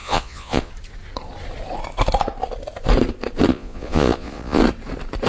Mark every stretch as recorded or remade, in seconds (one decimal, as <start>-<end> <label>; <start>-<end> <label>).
0.0-0.7 remade; 0.7-3.5 recorded; 3.5-4.6 remade; 4.6-5.3 recorded